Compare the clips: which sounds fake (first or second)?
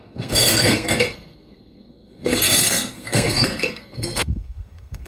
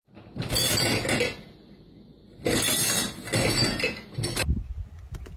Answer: first